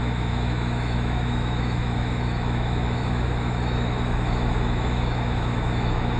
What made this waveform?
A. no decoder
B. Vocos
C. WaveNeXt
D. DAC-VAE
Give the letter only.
D